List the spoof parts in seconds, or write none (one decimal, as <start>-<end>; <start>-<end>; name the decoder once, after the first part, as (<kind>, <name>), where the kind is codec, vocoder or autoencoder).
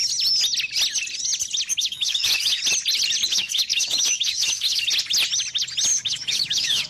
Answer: 1.7-2.6 (autoencoder, DAC-VAE); 3.3-4.8; 5.9-6.9